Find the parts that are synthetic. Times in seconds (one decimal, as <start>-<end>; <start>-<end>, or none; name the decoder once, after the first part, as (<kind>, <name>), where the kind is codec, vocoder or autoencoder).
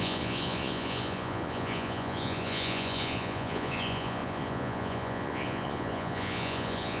0.0-7.0 (vocoder, Vocos)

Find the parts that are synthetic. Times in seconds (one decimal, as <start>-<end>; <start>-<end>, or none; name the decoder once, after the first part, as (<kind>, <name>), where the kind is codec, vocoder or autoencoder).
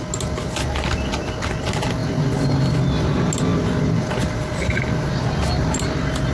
none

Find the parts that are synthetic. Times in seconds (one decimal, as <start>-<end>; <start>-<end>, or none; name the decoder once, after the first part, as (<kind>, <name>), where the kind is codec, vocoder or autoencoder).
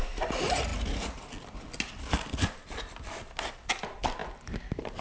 none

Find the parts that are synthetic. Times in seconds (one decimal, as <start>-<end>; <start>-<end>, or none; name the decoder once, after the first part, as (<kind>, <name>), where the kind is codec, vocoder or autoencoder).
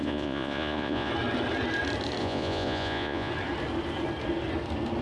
0.0-1.1 (vocoder, Vocos); 2.2-3.3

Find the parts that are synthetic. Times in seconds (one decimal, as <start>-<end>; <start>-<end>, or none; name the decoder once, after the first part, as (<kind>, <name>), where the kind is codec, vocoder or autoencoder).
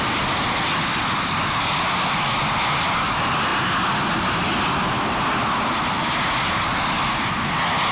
none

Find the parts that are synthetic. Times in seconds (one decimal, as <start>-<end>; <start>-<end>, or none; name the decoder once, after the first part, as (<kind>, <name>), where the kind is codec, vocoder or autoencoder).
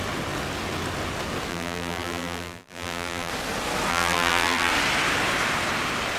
1.5-3.3 (vocoder, BigVGAN v2); 3.9-4.7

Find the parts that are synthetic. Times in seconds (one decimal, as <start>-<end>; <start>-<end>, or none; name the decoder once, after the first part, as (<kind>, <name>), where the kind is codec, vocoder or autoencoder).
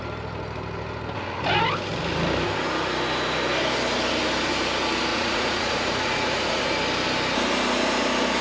5.1-6.7 (vocoder, Vocos)